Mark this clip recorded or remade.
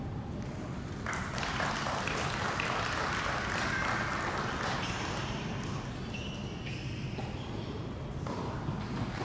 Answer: recorded